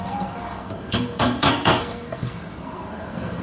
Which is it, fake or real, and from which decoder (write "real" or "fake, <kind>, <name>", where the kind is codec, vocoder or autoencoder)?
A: fake, codec, SNAC